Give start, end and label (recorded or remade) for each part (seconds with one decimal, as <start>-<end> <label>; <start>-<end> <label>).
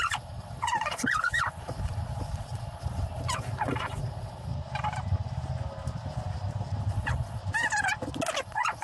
0.0-4.5 remade; 4.5-6.9 recorded; 6.9-7.4 remade; 7.4-8.4 recorded; 8.4-8.8 remade